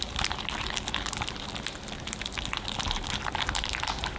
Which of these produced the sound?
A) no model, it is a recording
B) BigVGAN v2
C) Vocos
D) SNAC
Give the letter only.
A